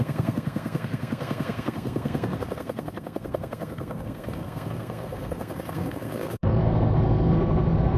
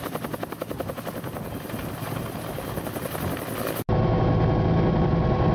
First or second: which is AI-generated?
first